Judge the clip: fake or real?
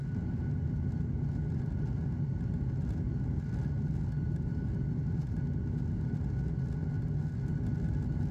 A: real